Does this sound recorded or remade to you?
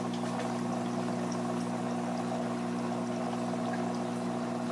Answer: recorded